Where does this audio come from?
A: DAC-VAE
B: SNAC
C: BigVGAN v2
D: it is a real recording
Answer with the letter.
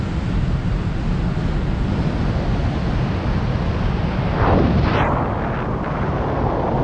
D